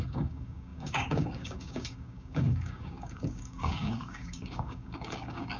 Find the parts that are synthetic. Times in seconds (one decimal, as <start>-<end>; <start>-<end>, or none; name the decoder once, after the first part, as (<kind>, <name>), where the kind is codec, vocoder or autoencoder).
0.0-5.6 (codec, DAC)